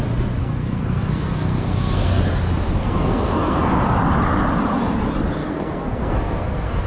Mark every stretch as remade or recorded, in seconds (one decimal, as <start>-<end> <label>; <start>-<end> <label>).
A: 0.0-0.4 recorded; 0.4-2.2 remade; 2.2-2.8 recorded; 2.8-3.7 remade; 3.7-5.4 recorded; 5.4-6.9 remade

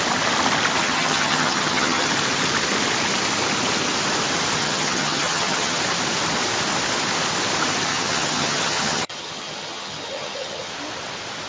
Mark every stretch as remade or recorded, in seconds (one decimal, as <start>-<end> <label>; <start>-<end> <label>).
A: 0.0-0.8 recorded; 0.8-2.1 remade; 2.1-4.6 recorded; 4.6-5.8 remade; 5.8-7.9 recorded; 7.9-10.7 remade; 10.7-11.5 recorded

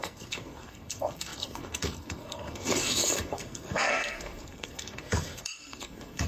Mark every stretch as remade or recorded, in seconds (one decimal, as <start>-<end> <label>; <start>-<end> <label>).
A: 0.0-6.3 remade

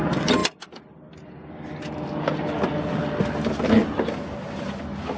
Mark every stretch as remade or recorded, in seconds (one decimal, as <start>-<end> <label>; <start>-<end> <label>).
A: 0.0-5.2 recorded

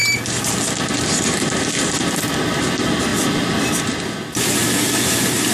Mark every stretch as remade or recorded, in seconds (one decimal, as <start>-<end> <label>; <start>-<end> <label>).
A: 0.0-5.5 recorded

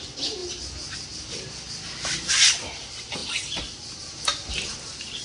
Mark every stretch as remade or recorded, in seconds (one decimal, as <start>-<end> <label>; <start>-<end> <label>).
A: 0.0-5.2 recorded